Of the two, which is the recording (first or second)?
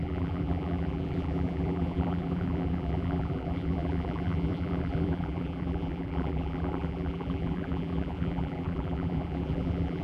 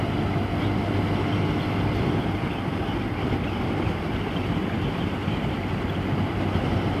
second